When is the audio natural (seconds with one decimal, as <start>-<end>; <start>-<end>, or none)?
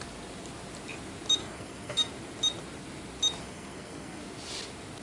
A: 0.0-1.4; 2.1-3.4; 4.2-5.0